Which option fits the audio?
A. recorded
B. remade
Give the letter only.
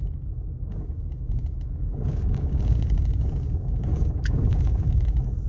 B